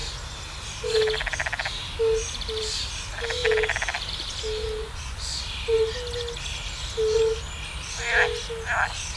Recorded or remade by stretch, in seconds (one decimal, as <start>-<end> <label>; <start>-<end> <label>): 0.0-4.8 recorded; 4.8-5.4 remade; 5.4-9.2 recorded

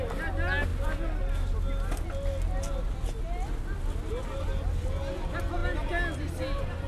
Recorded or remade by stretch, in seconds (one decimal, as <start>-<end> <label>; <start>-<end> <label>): 0.0-6.9 recorded

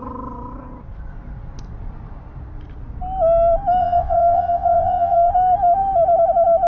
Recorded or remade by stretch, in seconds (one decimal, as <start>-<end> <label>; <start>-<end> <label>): 0.0-3.8 recorded; 3.8-5.3 remade; 5.3-6.7 recorded

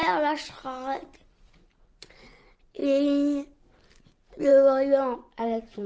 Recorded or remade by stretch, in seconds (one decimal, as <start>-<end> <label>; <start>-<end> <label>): 0.0-1.3 recorded; 1.3-2.8 remade; 2.8-4.0 recorded; 4.0-4.5 remade; 4.5-5.4 recorded; 5.4-5.9 remade